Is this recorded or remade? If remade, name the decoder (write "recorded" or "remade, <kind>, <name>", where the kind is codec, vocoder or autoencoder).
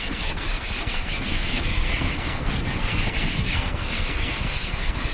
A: remade, codec, SNAC